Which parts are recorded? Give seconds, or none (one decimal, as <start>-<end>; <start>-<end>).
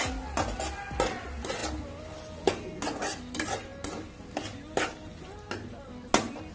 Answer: 0.0-6.5